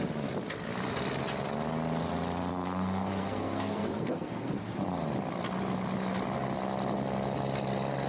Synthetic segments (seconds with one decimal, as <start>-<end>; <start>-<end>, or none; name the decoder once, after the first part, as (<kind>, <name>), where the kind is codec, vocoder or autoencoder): 2.5-4.6 (codec, SNAC)